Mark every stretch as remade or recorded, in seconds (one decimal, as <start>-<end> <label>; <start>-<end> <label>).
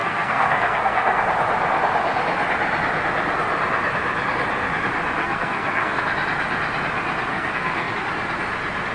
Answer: 0.0-1.2 remade; 1.2-5.2 recorded; 5.2-6.0 remade; 6.0-7.3 recorded; 7.3-7.9 remade; 7.9-8.9 recorded